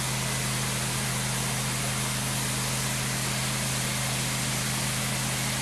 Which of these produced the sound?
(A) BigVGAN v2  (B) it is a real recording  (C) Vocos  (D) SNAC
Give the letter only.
B